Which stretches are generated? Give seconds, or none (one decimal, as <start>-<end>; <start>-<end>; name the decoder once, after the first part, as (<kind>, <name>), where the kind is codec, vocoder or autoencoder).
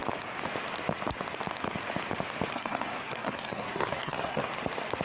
2.5-4.5 (codec, SNAC)